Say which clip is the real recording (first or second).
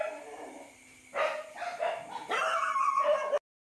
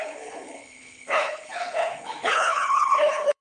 first